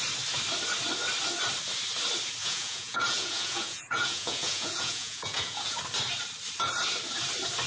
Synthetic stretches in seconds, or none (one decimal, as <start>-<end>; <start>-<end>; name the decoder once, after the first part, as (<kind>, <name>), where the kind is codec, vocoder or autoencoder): 2.4-5.8 (vocoder, Vocos)